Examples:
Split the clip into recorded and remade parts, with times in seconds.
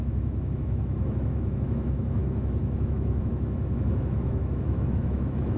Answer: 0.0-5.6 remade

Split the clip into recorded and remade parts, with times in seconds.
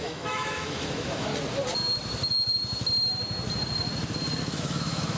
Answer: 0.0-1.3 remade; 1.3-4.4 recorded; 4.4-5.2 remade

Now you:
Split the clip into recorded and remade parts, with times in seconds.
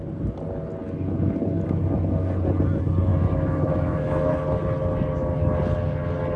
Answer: 0.0-3.1 recorded; 3.1-4.3 remade; 4.3-6.4 recorded